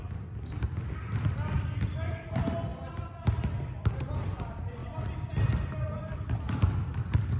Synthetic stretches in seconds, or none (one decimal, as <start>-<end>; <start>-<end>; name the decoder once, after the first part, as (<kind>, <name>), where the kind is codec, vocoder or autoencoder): 4.8-5.9 (vocoder, BigVGAN v2)